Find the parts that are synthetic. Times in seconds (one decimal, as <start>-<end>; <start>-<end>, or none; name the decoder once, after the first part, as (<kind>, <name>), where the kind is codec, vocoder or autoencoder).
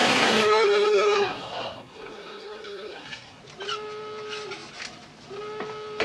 0.0-3.4 (codec, SNAC)